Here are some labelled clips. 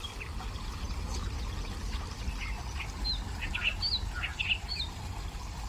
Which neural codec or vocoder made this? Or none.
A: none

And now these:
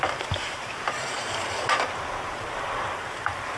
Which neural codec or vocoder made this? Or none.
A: vocoder, BigVGAN v2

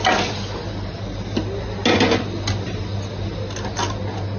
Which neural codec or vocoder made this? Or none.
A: none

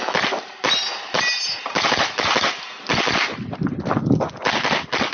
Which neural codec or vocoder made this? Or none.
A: none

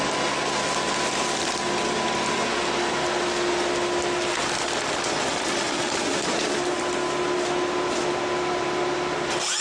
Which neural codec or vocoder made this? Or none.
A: none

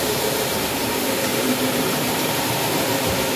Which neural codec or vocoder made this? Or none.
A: vocoder, BigVGAN v2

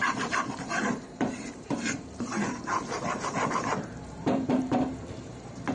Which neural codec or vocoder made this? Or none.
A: vocoder, BigVGAN v2